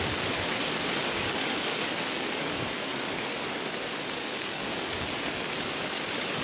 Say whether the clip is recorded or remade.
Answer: remade